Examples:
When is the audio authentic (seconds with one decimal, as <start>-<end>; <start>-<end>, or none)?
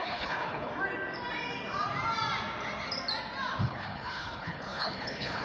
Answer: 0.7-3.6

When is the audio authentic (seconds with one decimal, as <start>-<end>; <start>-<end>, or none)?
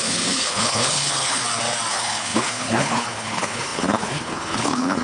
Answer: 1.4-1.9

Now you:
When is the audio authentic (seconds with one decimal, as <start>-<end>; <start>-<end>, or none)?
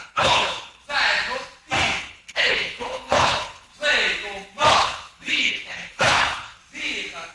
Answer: 0.8-2.0; 3.7-4.7; 6.6-7.3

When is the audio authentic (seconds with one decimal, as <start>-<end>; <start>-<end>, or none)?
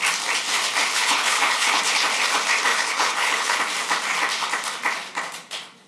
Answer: 0.0-0.9; 1.8-2.7; 3.6-5.9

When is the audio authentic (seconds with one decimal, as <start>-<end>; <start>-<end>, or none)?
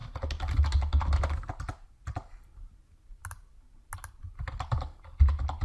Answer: 0.0-5.6